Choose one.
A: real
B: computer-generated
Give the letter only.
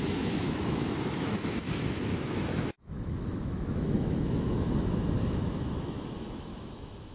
B